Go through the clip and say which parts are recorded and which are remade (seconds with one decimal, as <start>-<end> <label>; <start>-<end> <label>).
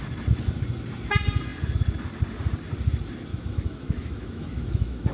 0.0-3.3 recorded; 3.3-5.1 remade